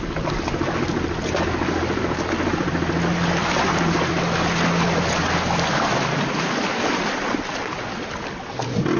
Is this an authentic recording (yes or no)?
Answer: yes